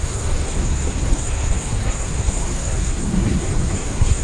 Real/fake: fake